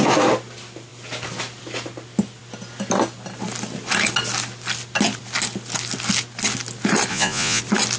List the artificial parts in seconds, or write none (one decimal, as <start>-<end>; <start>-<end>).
7.1-7.6